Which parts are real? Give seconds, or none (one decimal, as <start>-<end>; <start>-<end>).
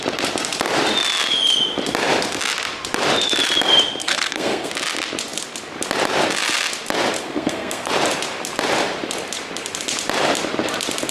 0.0-4.0; 4.7-7.2; 7.9-11.1